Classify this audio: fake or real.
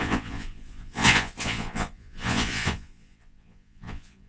fake